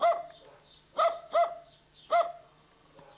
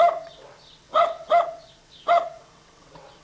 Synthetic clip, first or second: second